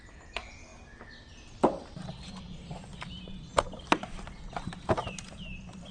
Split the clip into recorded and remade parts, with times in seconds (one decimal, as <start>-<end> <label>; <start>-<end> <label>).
0.0-5.9 recorded